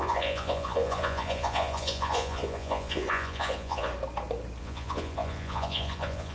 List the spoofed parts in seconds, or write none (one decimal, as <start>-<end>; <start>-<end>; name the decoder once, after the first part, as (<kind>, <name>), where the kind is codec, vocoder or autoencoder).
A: 0.0-3.9 (vocoder, Vocos); 4.6-6.3